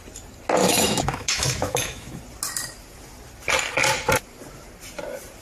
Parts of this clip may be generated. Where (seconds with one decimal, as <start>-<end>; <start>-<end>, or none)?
0.6-2.2